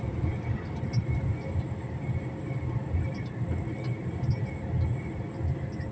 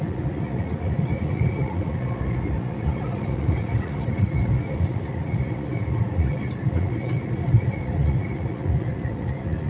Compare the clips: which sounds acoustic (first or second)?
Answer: first